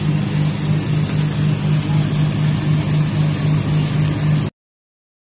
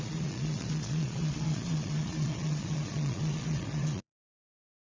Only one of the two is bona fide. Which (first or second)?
first